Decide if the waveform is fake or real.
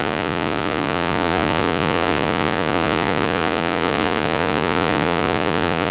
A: fake